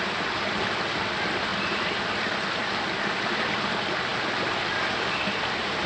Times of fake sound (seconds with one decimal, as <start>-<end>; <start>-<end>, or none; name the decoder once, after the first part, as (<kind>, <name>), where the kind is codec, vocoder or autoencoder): 0.0-1.5 (vocoder, BigVGAN v2); 3.5-5.9